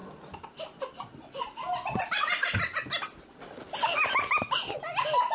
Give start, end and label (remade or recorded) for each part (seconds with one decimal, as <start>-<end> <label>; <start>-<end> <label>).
0.0-5.3 recorded